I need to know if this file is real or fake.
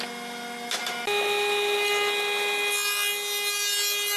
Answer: real